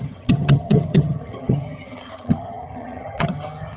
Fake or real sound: fake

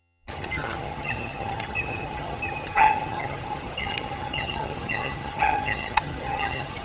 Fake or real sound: fake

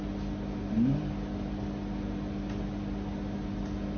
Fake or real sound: real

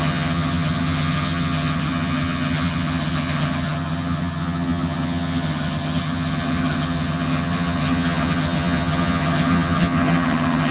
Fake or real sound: fake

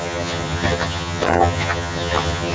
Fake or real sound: fake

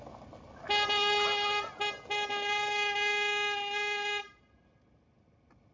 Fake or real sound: real